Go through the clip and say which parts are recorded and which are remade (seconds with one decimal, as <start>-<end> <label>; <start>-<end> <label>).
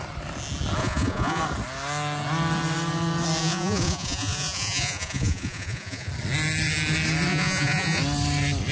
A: 0.0-0.8 recorded; 0.8-1.4 remade; 1.4-3.4 recorded; 3.4-6.1 remade; 6.1-7.3 recorded; 7.3-8.0 remade; 8.0-8.7 recorded